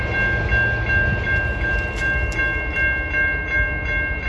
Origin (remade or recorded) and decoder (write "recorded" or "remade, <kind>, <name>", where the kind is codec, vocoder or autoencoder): recorded